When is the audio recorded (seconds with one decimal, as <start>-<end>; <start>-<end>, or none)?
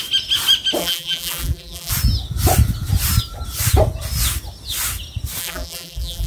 0.0-0.8; 1.9-5.4